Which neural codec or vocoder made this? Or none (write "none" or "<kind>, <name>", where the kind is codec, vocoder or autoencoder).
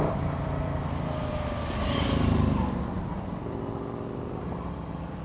none